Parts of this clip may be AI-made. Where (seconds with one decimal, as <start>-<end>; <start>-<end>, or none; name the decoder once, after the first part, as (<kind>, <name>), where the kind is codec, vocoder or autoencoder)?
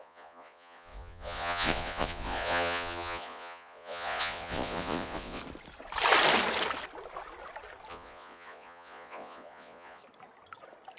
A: 0.0-5.4 (vocoder, Vocos); 7.9-10.0